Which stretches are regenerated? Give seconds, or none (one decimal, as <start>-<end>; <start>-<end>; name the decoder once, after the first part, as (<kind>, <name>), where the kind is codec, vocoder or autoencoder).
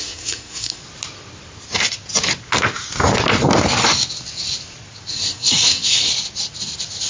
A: 0.0-0.8 (codec, SNAC); 5.1-6.1